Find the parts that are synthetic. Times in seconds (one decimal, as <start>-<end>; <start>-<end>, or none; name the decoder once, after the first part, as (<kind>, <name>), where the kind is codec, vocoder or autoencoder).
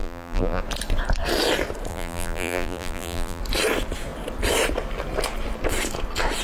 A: 0.0-0.6 (vocoder, BigVGAN v2); 1.9-3.4